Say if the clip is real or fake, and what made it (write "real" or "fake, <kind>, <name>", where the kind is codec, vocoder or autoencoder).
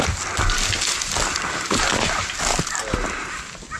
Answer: real